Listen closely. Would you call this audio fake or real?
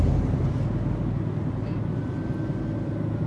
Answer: real